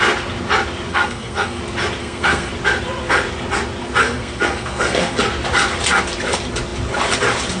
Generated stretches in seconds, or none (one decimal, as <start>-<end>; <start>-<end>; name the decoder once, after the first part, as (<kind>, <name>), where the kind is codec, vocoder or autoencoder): 0.9-1.6 (codec, SNAC); 2.0-2.5; 4.0-5.2